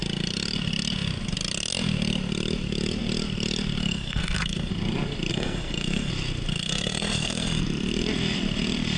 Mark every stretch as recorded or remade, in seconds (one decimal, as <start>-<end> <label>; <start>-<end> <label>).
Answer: 0.0-3.8 recorded; 3.8-4.7 remade; 4.7-5.3 recorded; 5.3-6.1 remade; 6.1-6.5 recorded; 6.5-7.6 remade; 7.6-9.0 recorded